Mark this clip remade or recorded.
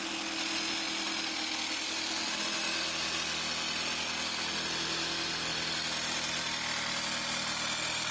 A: recorded